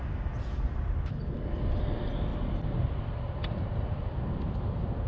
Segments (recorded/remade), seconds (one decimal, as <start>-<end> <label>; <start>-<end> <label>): 0.0-5.1 recorded